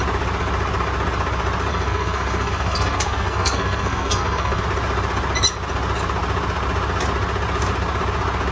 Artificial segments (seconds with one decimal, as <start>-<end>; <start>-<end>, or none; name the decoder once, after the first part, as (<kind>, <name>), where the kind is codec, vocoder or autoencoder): 1.7-4.6 (codec, SNAC)